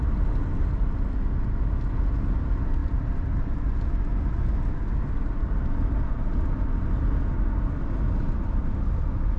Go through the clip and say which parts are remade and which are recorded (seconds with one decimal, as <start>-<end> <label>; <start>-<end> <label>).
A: 0.0-9.4 recorded